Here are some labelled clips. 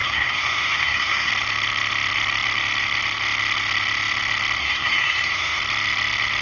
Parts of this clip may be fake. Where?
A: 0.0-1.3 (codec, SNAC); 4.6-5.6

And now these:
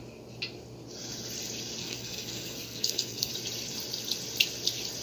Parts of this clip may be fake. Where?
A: 1.8-3.3 (codec, SNAC)

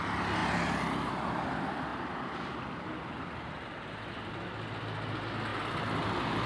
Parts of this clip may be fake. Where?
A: 1.9-4.3 (vocoder, BigVGAN v2)

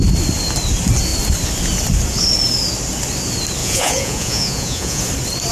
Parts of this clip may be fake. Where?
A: 3.6-5.0 (vocoder, Vocos)

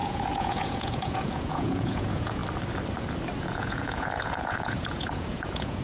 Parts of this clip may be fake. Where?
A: 0.0-2.4 (vocoder, Vocos); 3.4-5.8

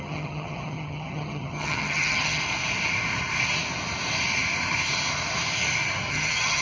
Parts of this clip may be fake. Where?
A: 0.0-2.4 (vocoder, HiFi-GAN); 6.1-6.6